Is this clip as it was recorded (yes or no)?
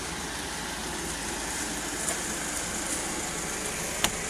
yes